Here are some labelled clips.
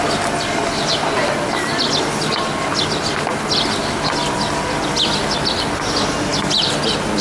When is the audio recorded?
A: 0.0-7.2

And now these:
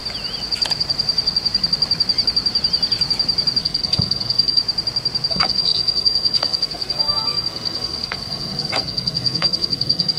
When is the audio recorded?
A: 0.0-3.6; 4.6-5.3

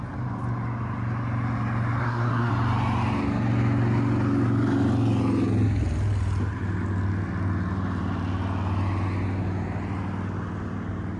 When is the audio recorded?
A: 0.0-2.0; 2.5-11.2

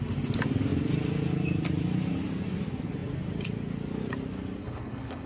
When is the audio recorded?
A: 0.0-4.6